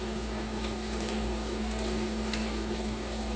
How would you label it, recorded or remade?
remade